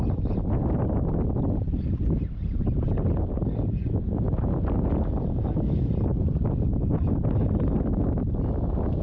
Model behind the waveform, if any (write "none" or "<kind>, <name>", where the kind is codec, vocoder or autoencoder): none